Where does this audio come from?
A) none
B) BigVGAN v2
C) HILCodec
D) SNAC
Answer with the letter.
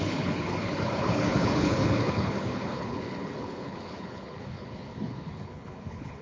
C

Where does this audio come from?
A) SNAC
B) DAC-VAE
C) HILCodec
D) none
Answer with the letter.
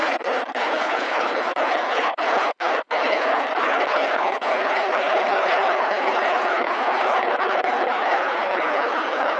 C